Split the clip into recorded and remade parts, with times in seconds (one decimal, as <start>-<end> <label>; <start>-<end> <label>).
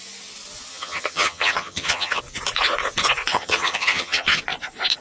0.0-0.7 recorded; 0.7-2.2 remade; 2.2-3.3 recorded; 3.3-4.4 remade; 4.4-5.0 recorded